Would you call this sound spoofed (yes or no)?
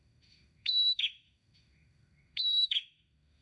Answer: yes